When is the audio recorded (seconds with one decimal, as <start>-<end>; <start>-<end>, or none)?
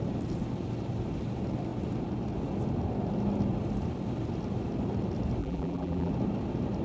0.0-5.4; 6.1-6.8